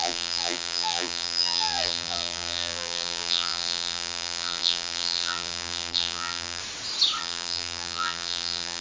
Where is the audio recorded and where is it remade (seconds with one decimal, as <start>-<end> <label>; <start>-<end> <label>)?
0.0-6.6 remade; 6.6-7.2 recorded; 7.2-8.8 remade